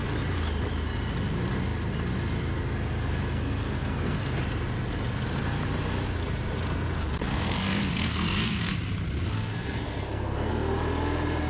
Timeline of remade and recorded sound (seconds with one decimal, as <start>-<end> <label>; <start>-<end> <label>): 0.0-3.1 recorded; 3.1-4.4 remade; 4.4-7.2 recorded; 7.2-8.7 remade; 8.7-9.3 recorded; 9.3-10.5 remade; 10.5-11.5 recorded